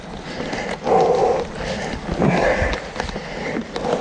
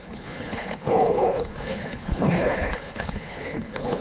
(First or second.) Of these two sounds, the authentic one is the first